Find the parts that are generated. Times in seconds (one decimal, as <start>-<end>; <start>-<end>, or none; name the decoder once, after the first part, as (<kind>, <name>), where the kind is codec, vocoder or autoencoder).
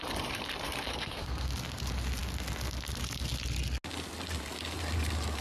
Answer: 0.9-1.5 (codec, SNAC)